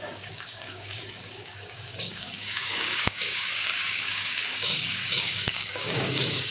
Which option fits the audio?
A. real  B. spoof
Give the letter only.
B